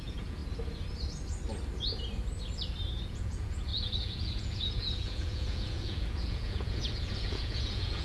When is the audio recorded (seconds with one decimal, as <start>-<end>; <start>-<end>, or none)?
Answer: 0.4-3.1